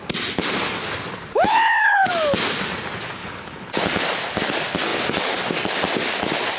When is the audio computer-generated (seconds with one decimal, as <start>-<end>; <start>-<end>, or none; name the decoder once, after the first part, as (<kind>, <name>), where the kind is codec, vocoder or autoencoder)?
1.5-2.1 (codec, HILCodec); 3.2-3.8